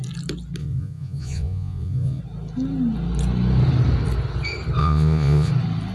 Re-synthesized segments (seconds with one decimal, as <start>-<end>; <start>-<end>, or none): 0.6-2.2; 4.8-5.5